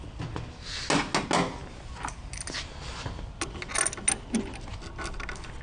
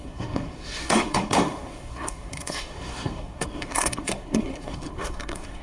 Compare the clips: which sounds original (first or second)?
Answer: first